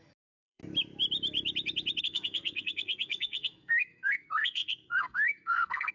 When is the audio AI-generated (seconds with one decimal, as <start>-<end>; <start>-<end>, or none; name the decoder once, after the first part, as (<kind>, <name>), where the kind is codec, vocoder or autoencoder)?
0.0-0.6 (codec, SNAC); 2.0-5.9